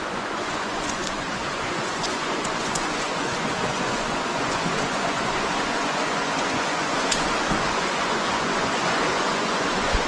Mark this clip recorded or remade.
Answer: remade